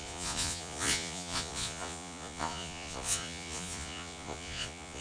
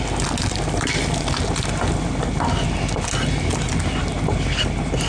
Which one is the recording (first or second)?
second